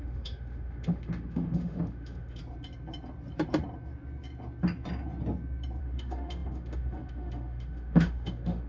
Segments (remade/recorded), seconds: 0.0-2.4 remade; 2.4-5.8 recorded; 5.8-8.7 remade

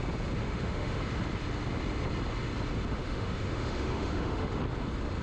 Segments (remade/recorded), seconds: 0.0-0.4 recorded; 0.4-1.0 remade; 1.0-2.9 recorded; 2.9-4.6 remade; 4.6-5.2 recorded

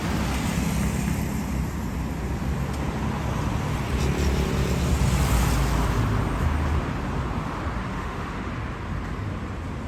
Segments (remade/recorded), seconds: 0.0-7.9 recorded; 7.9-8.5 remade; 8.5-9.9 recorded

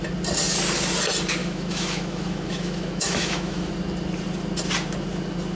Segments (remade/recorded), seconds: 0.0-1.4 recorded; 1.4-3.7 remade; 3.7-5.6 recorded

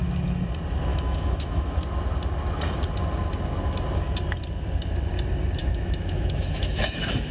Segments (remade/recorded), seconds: 0.0-0.9 recorded; 0.9-1.8 remade; 1.8-5.6 recorded; 5.6-7.3 remade

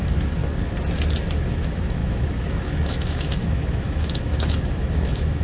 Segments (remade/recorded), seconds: 0.0-0.4 remade; 0.4-1.3 recorded; 1.3-5.4 remade

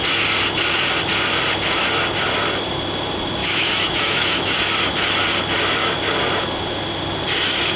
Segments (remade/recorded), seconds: 0.0-3.4 recorded; 3.4-4.6 remade; 4.6-7.8 recorded